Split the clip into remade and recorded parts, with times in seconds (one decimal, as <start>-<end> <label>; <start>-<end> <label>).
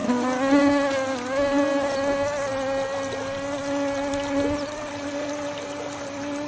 0.0-6.5 recorded